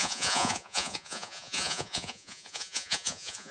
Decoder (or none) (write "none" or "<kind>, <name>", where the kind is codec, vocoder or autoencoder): vocoder, Vocos